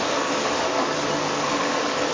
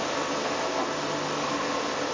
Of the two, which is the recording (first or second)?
second